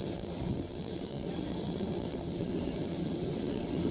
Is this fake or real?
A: fake